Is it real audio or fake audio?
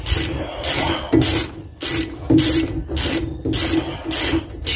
real